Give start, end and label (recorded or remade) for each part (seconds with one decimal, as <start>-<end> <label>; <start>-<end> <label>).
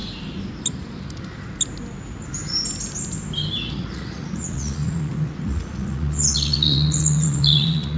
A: 0.0-3.7 recorded; 3.7-8.0 remade